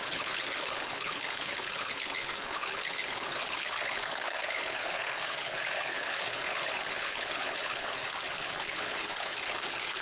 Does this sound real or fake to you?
fake